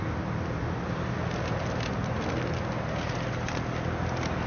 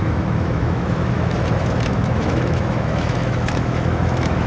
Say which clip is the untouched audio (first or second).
first